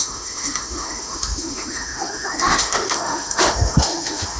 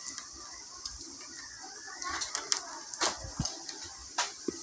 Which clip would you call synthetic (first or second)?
first